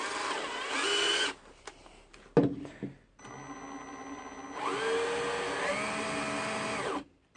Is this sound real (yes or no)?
yes